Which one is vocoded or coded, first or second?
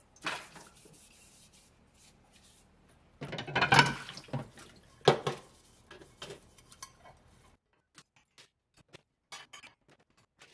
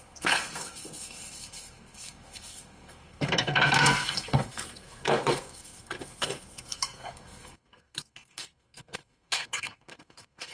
second